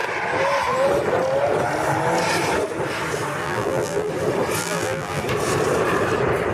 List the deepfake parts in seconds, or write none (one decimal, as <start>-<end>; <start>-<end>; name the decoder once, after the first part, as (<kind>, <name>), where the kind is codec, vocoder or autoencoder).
3.4-4.1 (vocoder, BigVGAN v2); 4.6-5.2